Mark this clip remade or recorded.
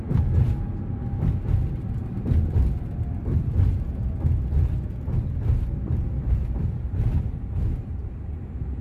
recorded